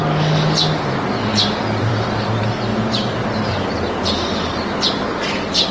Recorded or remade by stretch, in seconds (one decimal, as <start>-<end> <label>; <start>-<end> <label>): 0.0-1.3 recorded; 1.3-2.1 remade; 2.1-2.7 recorded; 2.7-3.5 remade; 3.5-5.7 recorded